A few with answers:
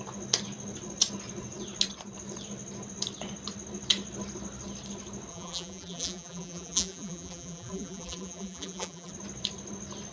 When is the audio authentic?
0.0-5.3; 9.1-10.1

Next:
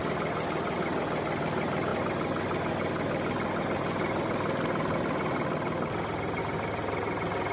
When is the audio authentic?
0.0-7.5

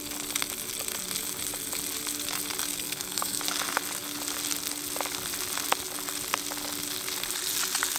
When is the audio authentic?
0.0-2.7; 3.4-8.0

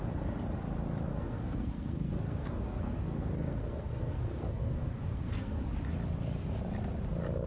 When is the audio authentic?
0.0-1.1; 5.6-7.5

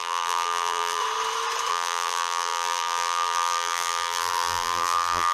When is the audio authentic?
1.0-1.7

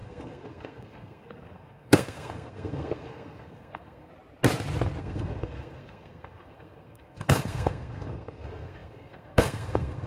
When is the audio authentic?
4.1-5.0